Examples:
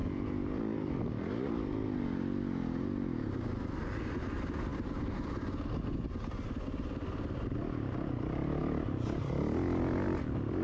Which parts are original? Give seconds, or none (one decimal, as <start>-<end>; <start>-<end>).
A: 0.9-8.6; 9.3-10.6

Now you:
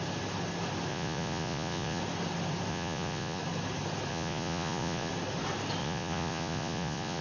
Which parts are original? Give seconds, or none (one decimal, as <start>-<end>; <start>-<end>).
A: 0.0-0.9; 2.0-2.7; 3.4-4.1; 5.1-5.8

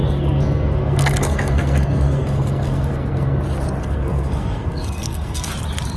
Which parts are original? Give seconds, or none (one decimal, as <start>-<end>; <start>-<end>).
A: 3.4-3.8; 5.5-6.0

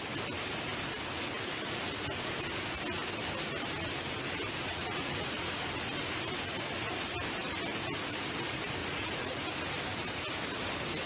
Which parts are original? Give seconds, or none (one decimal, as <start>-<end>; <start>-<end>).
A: 0.0-4.6; 5.5-8.8; 9.4-11.1